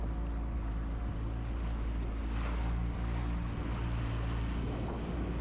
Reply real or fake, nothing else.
real